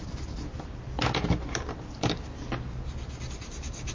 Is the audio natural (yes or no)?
yes